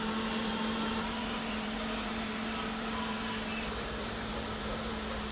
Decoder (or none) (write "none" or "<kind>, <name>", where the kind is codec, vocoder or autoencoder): vocoder, BigVGAN v2